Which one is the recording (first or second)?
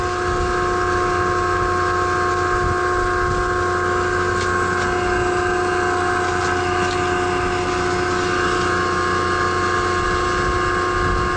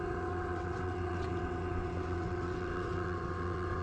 first